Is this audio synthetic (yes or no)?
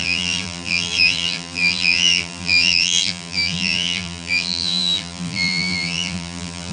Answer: yes